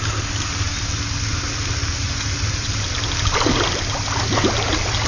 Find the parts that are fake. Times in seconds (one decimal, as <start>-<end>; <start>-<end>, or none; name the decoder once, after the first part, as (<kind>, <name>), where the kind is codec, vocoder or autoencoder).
none

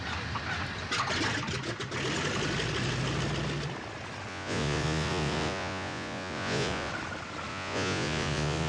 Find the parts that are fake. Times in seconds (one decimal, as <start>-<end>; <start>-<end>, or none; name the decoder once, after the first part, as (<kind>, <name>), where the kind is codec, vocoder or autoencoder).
4.3-6.9 (vocoder, Vocos); 7.5-8.7